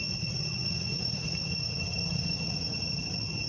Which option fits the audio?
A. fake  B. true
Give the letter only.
A